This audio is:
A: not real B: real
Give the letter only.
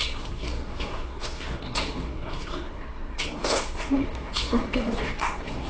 A